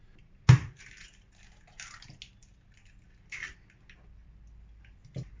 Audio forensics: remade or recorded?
recorded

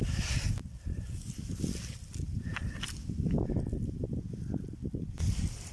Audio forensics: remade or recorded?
recorded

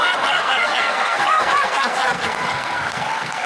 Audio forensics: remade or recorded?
remade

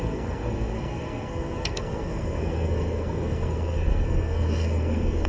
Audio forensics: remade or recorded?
remade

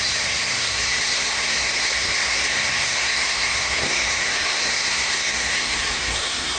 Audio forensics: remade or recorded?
remade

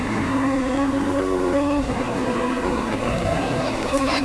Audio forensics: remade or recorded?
remade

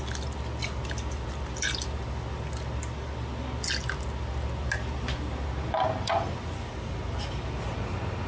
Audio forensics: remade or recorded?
recorded